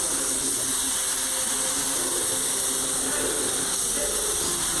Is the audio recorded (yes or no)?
yes